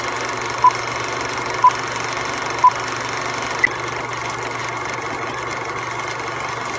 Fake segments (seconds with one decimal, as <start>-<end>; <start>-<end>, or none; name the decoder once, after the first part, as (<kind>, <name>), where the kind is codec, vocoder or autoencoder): none